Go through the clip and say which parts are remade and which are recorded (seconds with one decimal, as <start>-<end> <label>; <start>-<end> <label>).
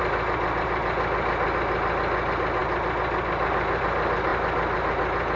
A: 0.0-5.4 recorded